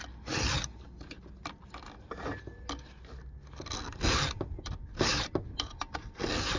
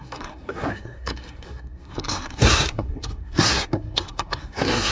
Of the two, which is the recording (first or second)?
first